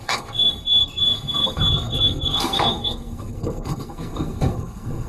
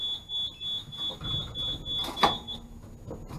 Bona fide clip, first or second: second